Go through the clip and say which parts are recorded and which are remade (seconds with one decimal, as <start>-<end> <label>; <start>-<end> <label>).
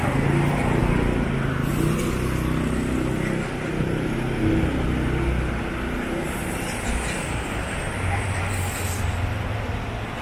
0.0-10.2 recorded